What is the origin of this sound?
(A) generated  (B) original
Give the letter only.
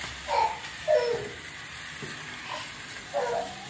B